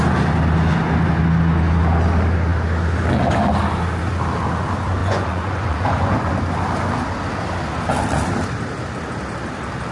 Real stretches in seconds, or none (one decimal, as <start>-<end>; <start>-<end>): 0.0-5.0; 6.3-9.9